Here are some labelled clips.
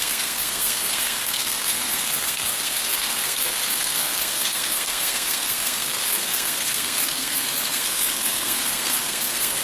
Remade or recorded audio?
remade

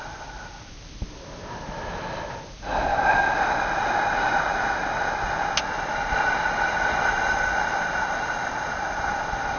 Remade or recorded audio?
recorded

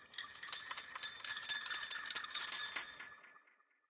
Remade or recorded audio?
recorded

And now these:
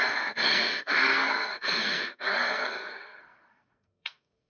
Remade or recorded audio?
remade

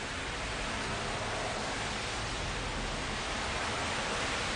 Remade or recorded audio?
recorded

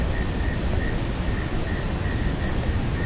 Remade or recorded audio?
recorded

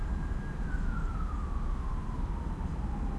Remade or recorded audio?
recorded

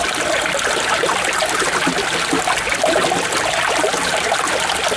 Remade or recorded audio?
recorded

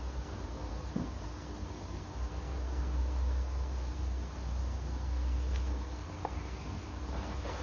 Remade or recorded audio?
remade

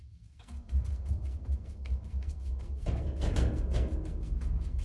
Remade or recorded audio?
remade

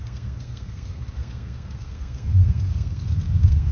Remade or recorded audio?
remade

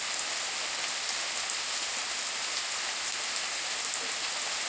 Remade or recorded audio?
recorded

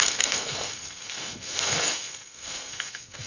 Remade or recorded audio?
remade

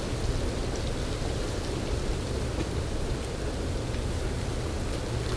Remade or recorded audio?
recorded